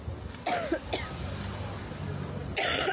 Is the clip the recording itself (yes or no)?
yes